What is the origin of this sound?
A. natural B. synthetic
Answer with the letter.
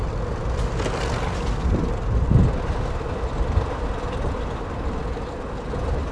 A